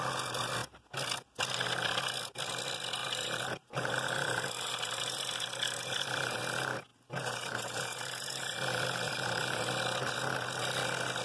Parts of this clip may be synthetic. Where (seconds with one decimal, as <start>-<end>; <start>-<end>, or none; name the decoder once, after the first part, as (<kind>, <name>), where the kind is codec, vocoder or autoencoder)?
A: 3.0-6.4 (vocoder, BigVGAN v2); 6.9-9.7